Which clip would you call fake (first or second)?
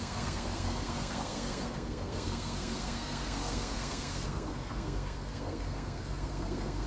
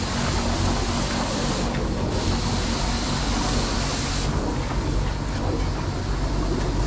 first